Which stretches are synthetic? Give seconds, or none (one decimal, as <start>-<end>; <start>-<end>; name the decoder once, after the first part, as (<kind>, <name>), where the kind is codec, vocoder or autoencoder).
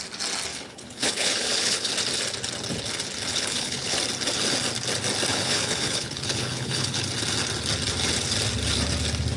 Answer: 0.5-1.9 (codec, HILCodec); 3.3-4.0; 5.3-7.1